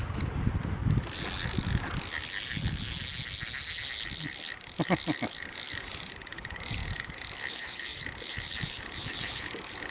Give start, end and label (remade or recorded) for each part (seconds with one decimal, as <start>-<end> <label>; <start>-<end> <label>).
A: 0.0-0.8 remade; 0.8-6.1 recorded; 6.1-6.8 remade; 6.8-7.5 recorded; 7.5-9.9 remade